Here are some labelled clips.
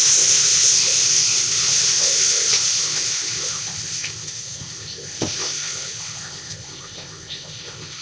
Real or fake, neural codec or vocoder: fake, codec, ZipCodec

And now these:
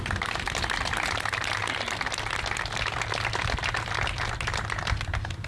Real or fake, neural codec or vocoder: real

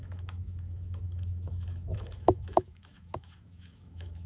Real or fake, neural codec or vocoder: fake, autoencoder, DAC-VAE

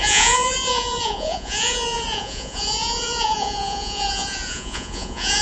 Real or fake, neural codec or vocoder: fake, vocoder, Vocos